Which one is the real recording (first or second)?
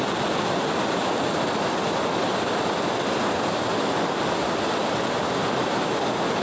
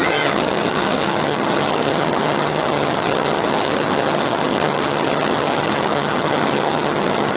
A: first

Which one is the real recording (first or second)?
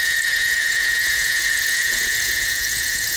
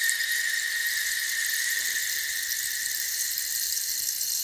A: second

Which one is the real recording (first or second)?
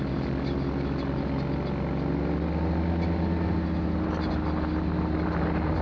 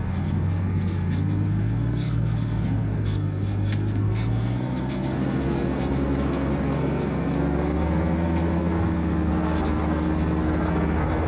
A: first